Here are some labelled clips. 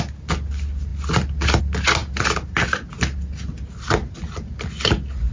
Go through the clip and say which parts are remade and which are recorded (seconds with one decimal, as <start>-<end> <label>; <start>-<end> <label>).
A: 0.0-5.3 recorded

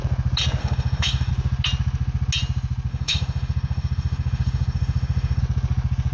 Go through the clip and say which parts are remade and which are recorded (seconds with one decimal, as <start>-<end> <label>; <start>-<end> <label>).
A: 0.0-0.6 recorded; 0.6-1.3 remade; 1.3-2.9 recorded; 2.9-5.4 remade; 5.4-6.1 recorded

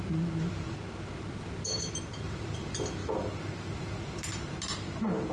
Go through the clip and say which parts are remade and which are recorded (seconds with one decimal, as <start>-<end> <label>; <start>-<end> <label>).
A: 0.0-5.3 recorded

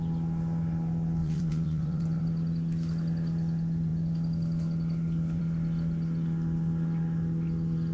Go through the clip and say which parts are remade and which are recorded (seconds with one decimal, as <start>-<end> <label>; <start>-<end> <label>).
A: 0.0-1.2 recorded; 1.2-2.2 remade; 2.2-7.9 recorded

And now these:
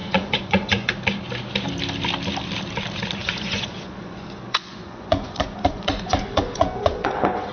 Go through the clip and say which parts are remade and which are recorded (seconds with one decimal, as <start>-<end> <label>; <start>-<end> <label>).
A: 0.0-0.9 remade; 0.9-3.2 recorded; 3.2-7.5 remade

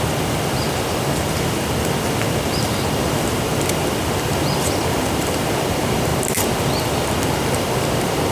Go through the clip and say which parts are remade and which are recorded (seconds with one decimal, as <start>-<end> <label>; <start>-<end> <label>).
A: 0.0-8.3 recorded